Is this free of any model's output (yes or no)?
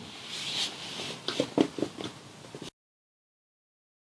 yes